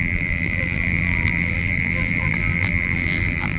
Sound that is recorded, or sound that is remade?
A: remade